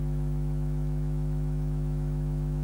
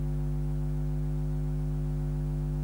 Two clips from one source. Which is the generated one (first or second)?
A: first